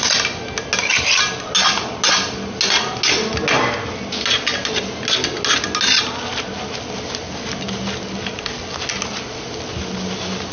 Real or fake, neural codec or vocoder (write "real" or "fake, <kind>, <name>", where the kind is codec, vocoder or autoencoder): real